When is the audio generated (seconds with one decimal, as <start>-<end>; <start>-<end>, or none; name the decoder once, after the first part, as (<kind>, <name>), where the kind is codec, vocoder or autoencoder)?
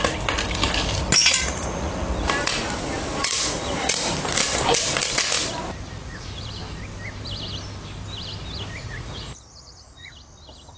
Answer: 1.3-1.9 (vocoder, Vocos); 3.2-3.9; 6.0-6.5; 8.8-10.1